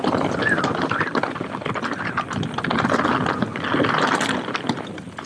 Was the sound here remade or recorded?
recorded